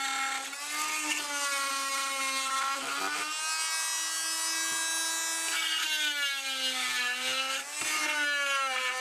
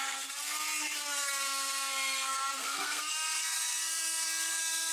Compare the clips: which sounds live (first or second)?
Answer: first